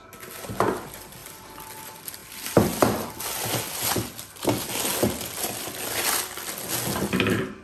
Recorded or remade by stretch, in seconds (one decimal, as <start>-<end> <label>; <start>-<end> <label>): 0.0-2.2 recorded; 2.2-3.1 remade; 3.1-7.6 recorded